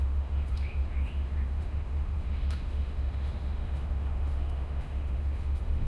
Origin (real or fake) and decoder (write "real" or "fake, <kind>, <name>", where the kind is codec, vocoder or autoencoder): fake, autoencoder, DAC-VAE